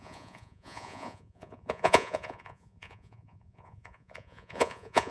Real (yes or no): no